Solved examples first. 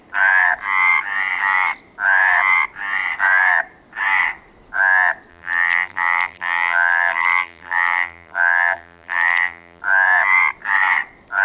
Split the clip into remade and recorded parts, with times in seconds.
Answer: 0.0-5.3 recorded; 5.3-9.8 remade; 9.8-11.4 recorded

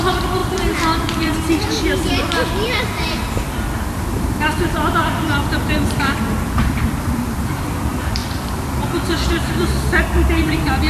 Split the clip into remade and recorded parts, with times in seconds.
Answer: 0.0-0.4 remade; 0.4-1.2 recorded; 1.2-8.2 remade; 8.2-9.1 recorded; 9.1-10.9 remade

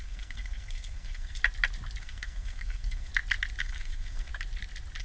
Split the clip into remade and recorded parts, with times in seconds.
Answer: 0.0-1.4 remade; 1.4-2.0 recorded; 2.0-3.1 remade; 3.1-3.6 recorded; 3.6-4.3 remade; 4.3-5.0 recorded

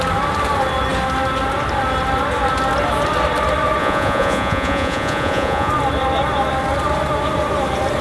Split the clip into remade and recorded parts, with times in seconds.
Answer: 0.0-3.8 recorded; 3.8-5.7 remade; 5.7-8.0 recorded

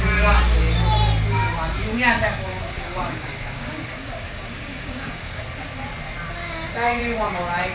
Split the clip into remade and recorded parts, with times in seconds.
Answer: 0.0-1.8 recorded; 1.8-5.4 remade; 5.4-6.4 recorded; 6.4-7.0 remade; 7.0-7.7 recorded

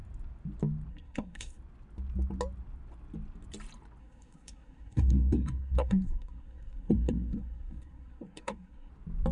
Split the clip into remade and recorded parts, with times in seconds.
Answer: 0.0-0.9 recorded; 0.9-1.6 remade; 1.6-4.0 recorded; 4.0-8.9 remade; 8.9-9.3 recorded

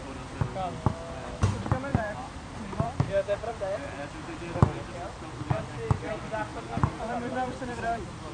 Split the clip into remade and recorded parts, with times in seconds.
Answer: 0.0-1.9 recorded; 1.9-3.5 remade; 3.5-6.5 recorded; 6.5-8.3 remade